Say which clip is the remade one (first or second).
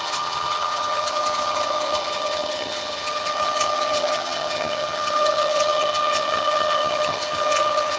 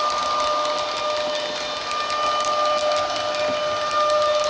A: first